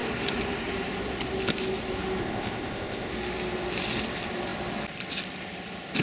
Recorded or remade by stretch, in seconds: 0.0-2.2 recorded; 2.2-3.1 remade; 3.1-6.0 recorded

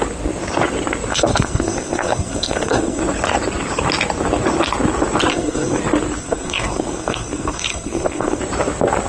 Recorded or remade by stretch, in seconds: 0.0-1.1 recorded; 1.1-3.0 remade; 3.0-5.3 recorded; 5.3-5.8 remade; 5.8-6.2 recorded; 6.2-8.4 remade; 8.4-9.1 recorded

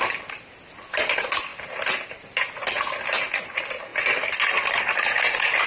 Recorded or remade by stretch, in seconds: 0.0-5.7 recorded

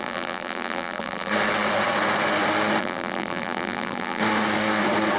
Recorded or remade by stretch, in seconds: 0.0-1.3 remade; 1.3-2.8 recorded; 2.8-4.2 remade; 4.2-5.2 recorded